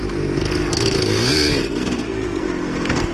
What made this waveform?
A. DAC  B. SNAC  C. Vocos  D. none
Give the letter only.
B